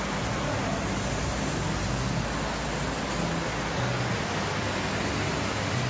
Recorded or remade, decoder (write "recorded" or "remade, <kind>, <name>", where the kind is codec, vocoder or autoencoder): recorded